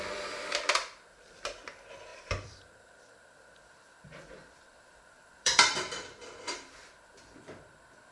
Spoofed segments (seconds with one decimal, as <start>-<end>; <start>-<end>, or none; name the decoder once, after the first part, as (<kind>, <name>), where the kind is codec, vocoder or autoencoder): 2.1-4.0 (vocoder, BigVGAN v2); 4.7-6.7

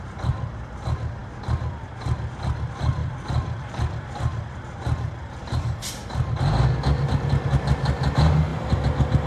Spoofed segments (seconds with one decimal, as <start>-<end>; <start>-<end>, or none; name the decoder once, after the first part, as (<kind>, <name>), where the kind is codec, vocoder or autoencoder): none

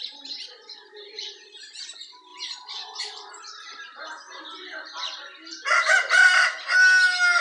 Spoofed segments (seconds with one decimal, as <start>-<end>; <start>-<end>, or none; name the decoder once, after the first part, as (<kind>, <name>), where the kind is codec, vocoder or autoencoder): 0.0-6.8 (vocoder, BigVGAN v2)

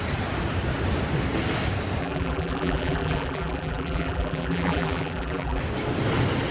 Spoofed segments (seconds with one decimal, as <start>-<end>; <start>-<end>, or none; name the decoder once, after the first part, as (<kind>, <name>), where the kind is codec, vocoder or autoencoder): 2.0-5.6 (vocoder, BigVGAN v2)

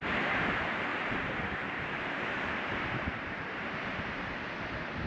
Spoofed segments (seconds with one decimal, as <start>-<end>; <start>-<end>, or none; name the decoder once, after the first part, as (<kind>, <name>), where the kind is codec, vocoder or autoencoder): 0.9-4.0 (vocoder, BigVGAN v2)

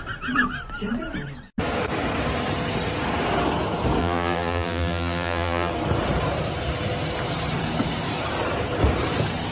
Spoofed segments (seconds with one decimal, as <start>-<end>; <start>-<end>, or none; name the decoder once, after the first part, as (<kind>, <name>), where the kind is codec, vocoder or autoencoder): 4.0-5.7 (vocoder, BigVGAN v2)

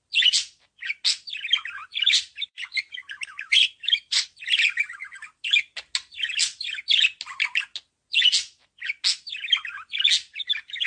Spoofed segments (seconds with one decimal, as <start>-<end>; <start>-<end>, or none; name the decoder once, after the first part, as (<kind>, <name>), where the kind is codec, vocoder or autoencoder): 1.8-4.4 (vocoder, BigVGAN v2)

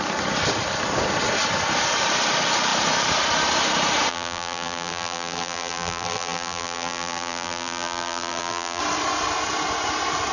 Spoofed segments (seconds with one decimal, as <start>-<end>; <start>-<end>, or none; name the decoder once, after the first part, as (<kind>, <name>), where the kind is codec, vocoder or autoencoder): 4.1-8.8 (vocoder, BigVGAN v2)